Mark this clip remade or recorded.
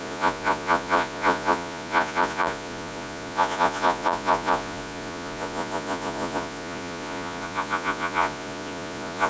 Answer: remade